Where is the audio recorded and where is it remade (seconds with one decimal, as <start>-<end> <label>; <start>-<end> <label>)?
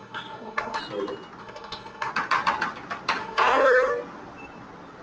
0.0-0.8 remade; 0.8-1.4 recorded; 1.4-2.1 remade; 2.1-3.2 recorded; 3.2-3.9 remade; 3.9-5.0 recorded